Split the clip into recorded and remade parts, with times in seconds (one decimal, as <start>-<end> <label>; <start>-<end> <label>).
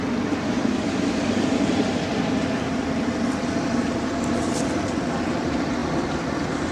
0.0-6.7 remade